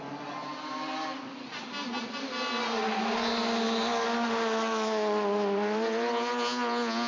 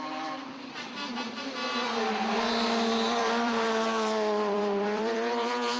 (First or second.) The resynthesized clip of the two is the second